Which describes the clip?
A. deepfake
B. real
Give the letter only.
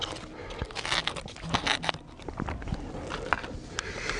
B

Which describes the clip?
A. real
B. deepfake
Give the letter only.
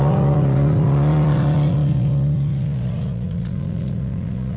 B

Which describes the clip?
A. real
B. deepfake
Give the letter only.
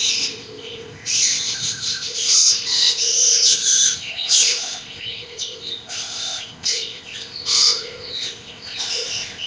B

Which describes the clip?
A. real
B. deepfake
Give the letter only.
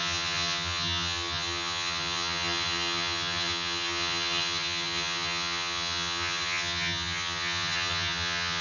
B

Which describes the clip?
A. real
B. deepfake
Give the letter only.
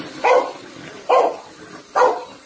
A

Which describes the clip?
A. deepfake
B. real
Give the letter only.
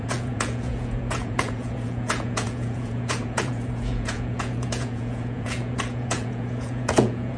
A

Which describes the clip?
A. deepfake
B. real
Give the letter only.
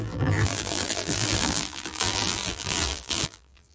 A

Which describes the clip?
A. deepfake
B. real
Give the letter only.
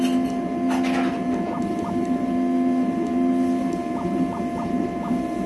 B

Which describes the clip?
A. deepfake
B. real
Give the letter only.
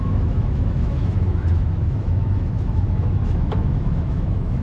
A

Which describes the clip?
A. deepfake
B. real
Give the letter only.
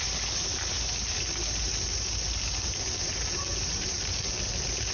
B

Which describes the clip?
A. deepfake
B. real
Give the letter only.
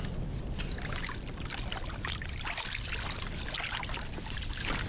B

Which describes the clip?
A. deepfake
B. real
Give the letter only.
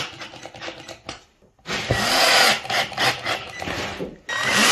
B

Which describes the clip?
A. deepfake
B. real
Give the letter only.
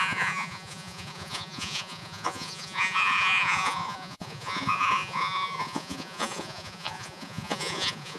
A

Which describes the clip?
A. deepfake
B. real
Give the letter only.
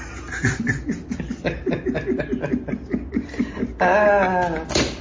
B